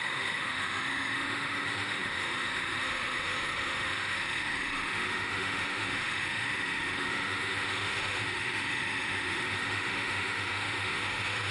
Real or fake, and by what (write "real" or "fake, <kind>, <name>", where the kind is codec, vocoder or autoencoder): fake, autoencoder, DAC-VAE